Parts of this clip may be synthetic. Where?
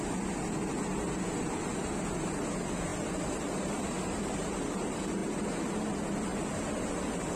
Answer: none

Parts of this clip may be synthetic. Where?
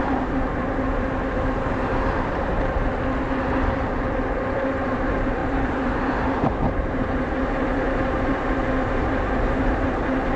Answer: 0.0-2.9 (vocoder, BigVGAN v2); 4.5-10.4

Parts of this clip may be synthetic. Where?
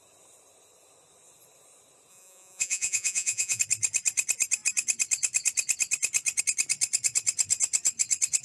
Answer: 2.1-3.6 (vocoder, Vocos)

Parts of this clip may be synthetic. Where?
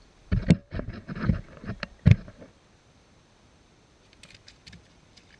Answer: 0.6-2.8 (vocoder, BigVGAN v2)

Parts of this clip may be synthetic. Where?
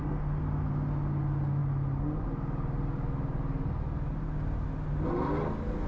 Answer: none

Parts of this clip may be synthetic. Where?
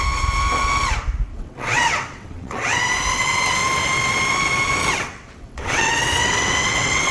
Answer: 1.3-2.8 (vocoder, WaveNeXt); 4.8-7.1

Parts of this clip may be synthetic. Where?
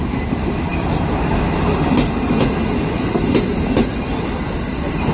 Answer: none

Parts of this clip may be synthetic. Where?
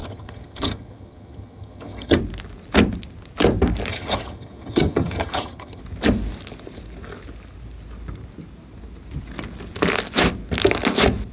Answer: 0.0-2.2 (vocoder, HiFi-GAN); 3.9-5.8